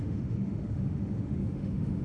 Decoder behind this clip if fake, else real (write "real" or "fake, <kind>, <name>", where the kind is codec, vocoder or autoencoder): fake, autoencoder, DAC-VAE